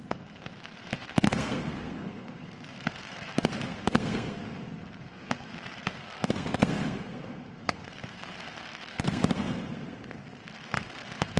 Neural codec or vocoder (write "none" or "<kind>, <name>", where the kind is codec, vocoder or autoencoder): codec, SNAC